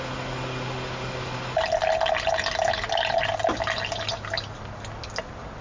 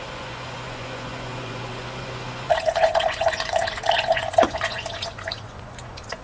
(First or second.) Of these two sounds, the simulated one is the second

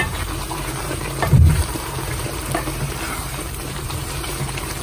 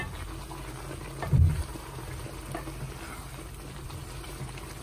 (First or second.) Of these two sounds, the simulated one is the first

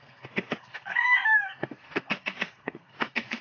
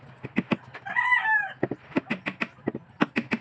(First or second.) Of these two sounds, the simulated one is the first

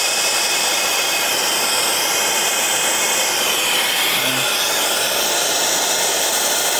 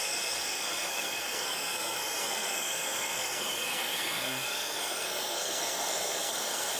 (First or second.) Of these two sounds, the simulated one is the second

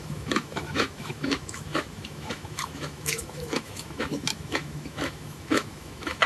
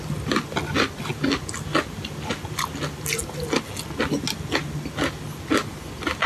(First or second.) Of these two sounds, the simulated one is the first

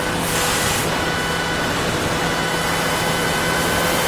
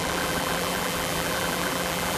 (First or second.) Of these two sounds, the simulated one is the second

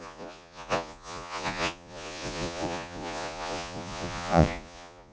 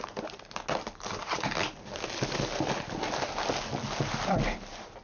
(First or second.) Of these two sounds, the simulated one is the first